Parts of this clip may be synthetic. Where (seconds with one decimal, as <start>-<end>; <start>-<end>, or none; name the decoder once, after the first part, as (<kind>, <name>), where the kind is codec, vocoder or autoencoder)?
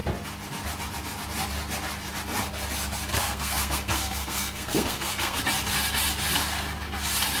3.1-5.4 (codec, SNAC)